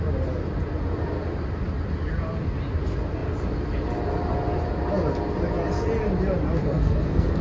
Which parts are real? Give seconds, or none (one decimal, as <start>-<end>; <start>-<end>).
0.0-6.6